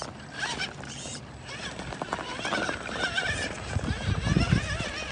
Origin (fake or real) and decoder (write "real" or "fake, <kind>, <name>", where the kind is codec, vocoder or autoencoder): real